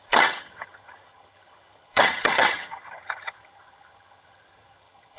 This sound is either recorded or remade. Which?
remade